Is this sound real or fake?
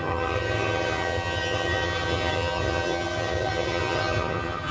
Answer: fake